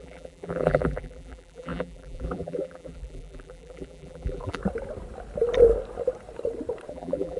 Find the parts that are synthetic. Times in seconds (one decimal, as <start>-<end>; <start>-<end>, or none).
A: 0.0-4.6; 6.9-7.4